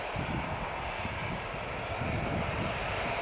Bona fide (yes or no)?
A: yes